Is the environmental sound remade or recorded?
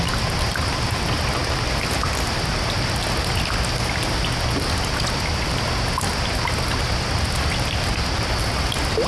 recorded